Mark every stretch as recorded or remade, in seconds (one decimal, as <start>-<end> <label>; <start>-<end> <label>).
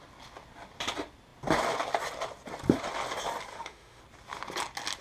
0.0-3.5 recorded; 3.5-4.0 remade; 4.0-5.0 recorded